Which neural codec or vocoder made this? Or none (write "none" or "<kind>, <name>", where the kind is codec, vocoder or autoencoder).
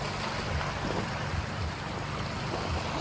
none